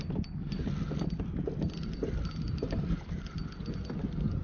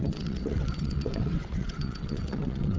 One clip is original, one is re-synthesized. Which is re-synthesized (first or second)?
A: second